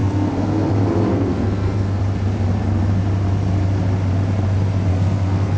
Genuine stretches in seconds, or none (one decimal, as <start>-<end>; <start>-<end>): 0.7-1.1; 2.0-4.9

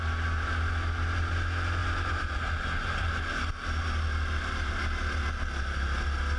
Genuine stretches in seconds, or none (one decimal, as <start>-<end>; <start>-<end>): 0.0-6.4

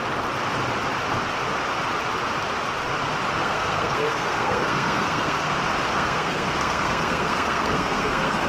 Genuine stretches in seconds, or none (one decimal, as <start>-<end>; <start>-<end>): 0.0-3.4; 5.5-5.9

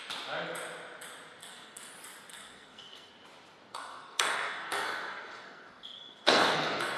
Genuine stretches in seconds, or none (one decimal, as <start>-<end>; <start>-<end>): 0.0-1.4; 1.9-2.3; 3.1-3.7

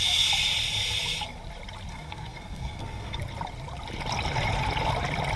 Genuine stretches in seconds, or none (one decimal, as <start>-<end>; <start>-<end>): 0.0-1.9; 3.2-5.4

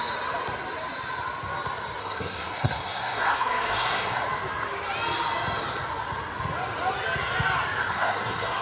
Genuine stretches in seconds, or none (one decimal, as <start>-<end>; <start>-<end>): 0.0-2.0; 4.2-7.8

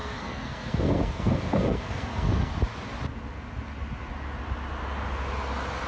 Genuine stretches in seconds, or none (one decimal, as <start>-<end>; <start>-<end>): 2.5-5.9

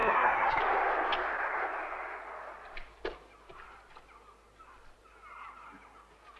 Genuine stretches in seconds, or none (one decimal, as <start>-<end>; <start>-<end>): 0.6-6.4